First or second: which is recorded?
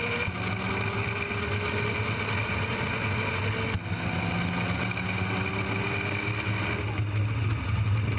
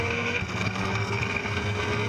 first